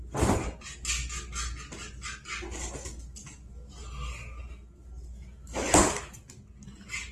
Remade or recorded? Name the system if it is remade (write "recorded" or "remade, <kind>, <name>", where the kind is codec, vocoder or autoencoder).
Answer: recorded